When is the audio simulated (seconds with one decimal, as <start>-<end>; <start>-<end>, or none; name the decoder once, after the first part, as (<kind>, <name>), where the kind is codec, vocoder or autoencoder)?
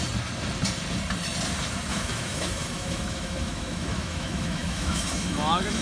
1.9-5.8 (autoencoder, DAC-VAE)